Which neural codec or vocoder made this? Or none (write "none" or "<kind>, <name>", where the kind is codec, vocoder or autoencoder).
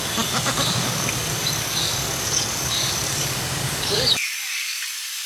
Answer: codec, DAC